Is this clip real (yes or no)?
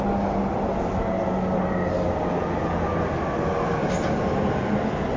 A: yes